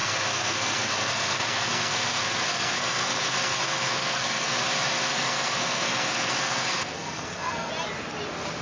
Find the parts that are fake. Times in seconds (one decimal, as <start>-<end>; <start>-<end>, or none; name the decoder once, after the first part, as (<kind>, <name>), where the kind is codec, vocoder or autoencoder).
0.0-4.5 (codec, SNAC); 5.1-7.7